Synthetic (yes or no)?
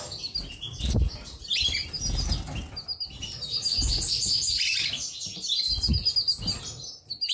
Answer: no